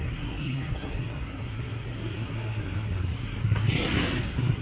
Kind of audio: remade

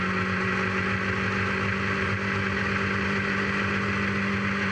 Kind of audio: recorded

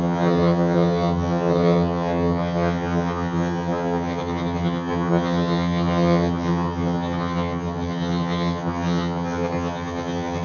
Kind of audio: remade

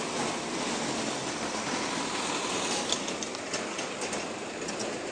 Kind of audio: recorded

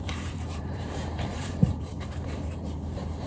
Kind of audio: remade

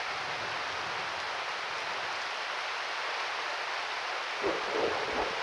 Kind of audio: recorded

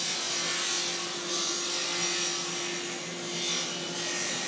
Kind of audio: recorded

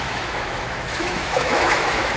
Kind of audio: remade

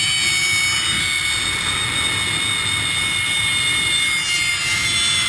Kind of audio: recorded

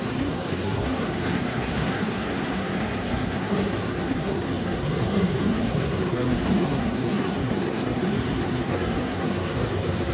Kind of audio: remade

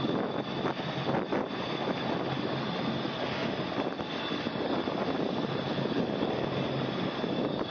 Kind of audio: recorded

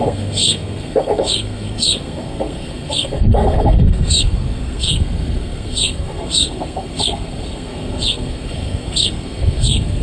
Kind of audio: remade